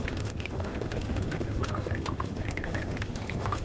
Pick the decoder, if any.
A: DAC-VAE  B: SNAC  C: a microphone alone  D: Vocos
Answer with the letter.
A